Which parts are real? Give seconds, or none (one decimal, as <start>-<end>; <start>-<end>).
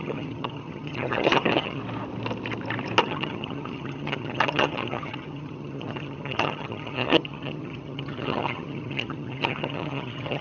1.8-3.0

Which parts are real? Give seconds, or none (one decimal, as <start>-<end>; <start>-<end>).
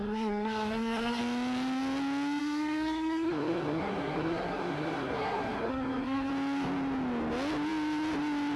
1.2-2.4; 6.3-8.6